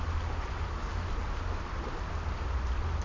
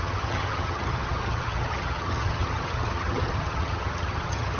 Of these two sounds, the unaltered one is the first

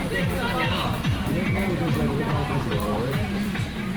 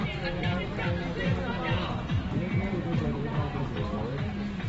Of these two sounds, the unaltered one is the second